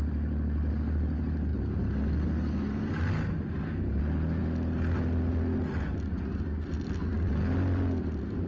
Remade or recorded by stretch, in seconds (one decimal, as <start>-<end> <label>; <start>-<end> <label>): 0.0-8.5 recorded